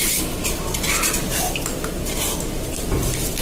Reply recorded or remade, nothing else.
recorded